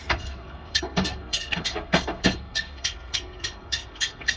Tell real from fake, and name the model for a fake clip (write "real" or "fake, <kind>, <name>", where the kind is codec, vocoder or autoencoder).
fake, codec, SNAC